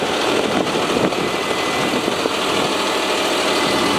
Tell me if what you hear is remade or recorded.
recorded